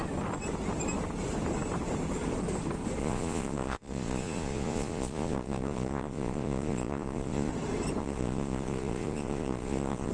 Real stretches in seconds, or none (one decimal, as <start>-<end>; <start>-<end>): 0.0-3.0; 7.5-8.0